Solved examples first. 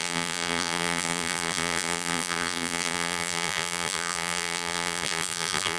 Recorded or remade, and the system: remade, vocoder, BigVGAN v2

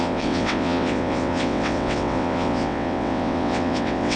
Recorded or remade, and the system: remade, vocoder, WaveNeXt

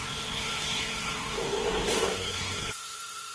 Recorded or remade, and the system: remade, codec, SNAC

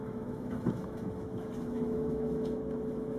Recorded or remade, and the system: remade, autoencoder, DAC-VAE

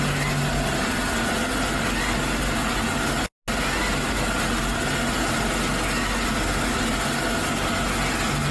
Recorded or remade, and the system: recorded